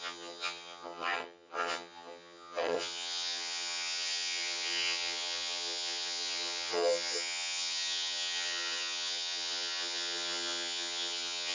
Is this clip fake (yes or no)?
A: yes